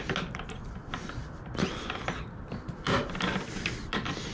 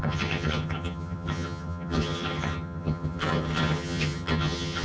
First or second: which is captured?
first